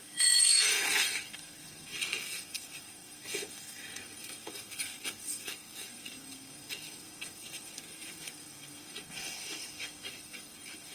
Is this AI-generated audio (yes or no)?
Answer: yes